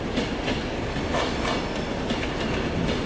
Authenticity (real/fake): real